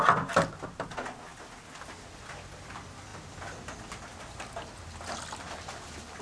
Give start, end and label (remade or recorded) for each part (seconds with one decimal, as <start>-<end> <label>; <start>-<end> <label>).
0.0-6.2 recorded